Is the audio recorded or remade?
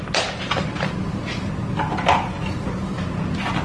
recorded